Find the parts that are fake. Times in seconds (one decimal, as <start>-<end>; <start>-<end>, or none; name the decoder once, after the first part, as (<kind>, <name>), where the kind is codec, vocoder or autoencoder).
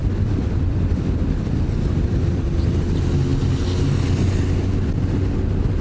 0.0-2.8 (vocoder, BigVGAN v2)